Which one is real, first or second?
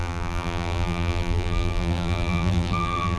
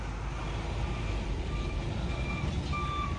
second